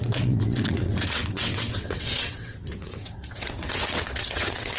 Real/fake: fake